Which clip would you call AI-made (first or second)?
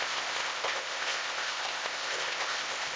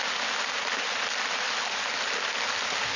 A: first